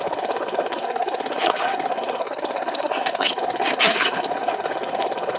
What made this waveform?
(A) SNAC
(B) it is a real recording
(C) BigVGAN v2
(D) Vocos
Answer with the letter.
A